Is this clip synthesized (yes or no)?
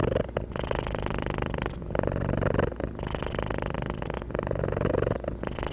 no